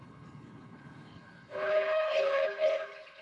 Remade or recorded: remade